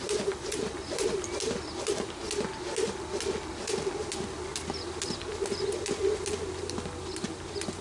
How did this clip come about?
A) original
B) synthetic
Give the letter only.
A